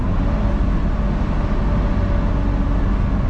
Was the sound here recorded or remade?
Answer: recorded